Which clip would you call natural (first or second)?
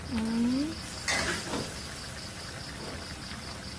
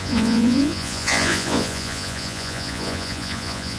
first